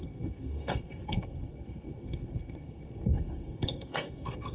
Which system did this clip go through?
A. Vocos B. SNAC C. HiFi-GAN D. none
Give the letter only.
B